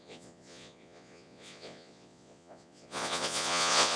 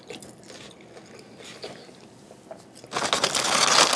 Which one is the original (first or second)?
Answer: second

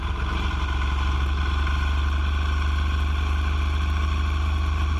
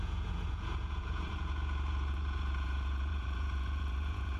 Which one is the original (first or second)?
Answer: first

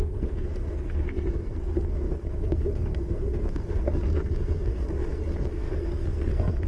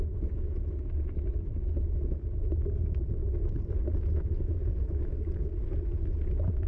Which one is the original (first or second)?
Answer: second